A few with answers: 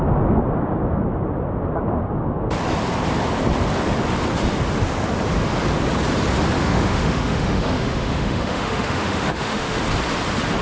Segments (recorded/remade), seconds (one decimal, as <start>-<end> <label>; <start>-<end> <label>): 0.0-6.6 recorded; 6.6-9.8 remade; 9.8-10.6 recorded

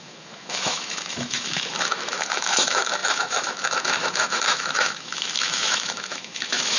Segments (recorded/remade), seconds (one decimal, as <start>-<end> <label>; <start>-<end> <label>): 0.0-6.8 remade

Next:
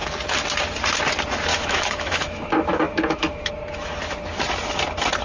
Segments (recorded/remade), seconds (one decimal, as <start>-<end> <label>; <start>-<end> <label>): 0.0-1.5 recorded; 1.5-3.5 remade; 3.5-5.2 recorded

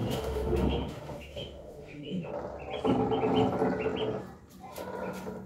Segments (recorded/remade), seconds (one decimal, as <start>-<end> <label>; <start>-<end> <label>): 0.0-2.3 remade; 2.3-5.5 recorded

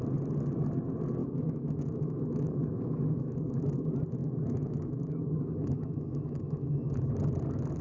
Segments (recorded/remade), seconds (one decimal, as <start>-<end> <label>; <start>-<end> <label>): 0.0-1.2 recorded; 1.2-3.8 remade; 3.8-4.2 recorded; 4.2-7.1 remade; 7.1-7.8 recorded

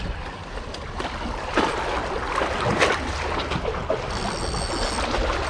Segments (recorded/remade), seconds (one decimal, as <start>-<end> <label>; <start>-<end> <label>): 0.0-5.5 recorded

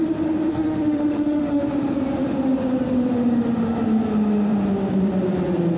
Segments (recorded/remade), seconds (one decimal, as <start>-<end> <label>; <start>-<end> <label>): 0.0-0.5 recorded; 0.5-1.6 remade; 1.6-5.8 recorded

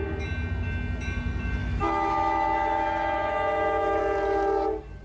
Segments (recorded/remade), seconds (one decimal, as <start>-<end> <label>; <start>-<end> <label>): 0.0-1.6 recorded; 1.6-4.0 remade; 4.0-5.0 recorded